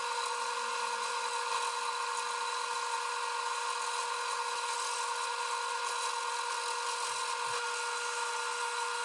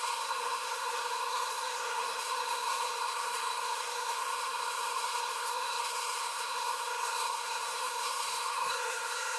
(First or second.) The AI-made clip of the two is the second